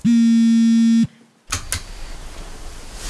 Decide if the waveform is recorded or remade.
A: recorded